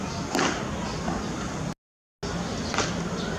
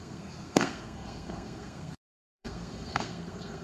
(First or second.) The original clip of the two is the first